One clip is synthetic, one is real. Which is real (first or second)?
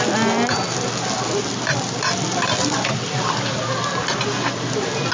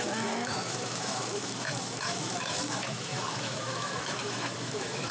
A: first